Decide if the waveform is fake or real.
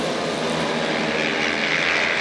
real